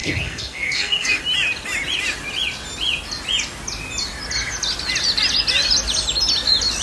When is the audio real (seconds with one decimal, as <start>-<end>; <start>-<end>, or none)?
1.2-6.8